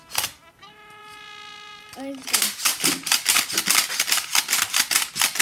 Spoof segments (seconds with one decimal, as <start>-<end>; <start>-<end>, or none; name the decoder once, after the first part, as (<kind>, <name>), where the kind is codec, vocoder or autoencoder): 1.0-3.4 (vocoder, BigVGAN v2)